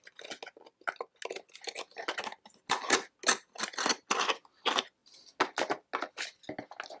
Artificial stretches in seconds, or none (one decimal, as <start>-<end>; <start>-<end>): none